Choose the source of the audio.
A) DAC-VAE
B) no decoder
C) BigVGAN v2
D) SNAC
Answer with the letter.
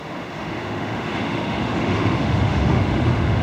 A